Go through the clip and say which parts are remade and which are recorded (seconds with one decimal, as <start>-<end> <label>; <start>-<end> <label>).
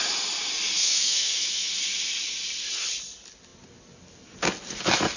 0.0-0.8 recorded; 0.8-1.7 remade; 1.7-5.2 recorded